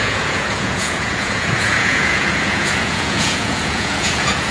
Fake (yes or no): yes